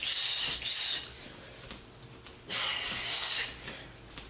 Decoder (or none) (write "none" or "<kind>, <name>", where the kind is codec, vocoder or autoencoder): none